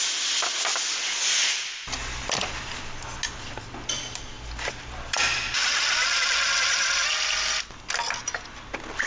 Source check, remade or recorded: recorded